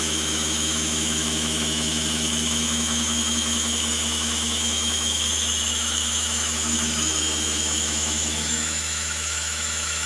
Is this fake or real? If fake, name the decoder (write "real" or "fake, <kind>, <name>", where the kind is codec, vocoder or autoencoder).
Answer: fake, autoencoder, DAC-VAE